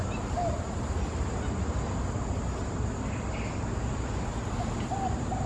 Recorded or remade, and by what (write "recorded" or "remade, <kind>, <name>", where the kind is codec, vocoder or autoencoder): recorded